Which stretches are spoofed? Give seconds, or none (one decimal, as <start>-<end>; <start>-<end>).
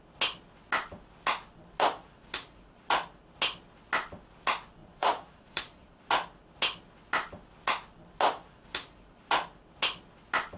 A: 4.8-6.0